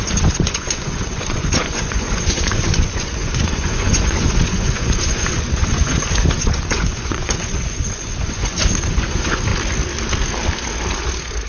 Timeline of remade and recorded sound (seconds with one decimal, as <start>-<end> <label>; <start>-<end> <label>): 0.0-9.5 remade; 9.5-11.5 recorded